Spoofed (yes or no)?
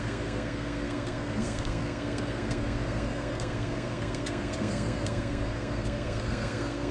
yes